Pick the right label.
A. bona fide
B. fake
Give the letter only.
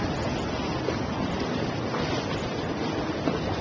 A